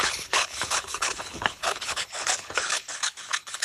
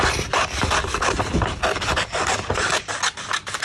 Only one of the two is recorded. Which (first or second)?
second